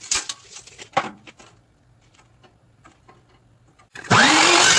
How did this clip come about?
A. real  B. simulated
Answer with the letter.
B